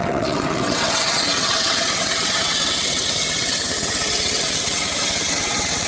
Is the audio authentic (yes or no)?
no